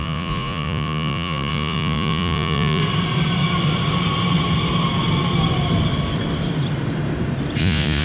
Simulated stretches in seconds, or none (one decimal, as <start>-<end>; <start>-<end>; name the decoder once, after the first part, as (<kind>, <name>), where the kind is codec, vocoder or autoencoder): 0.0-2.8 (vocoder, Vocos); 7.6-8.0